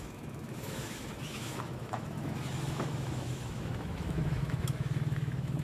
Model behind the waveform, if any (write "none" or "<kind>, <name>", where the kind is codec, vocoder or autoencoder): autoencoder, DAC-VAE